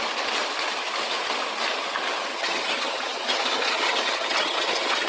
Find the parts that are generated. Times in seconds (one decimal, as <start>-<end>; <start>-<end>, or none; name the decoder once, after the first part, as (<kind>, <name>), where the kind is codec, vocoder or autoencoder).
2.3-5.1 (vocoder, HiFi-GAN)